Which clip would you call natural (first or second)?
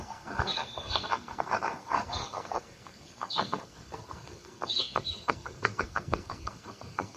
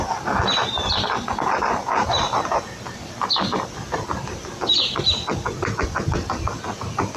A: second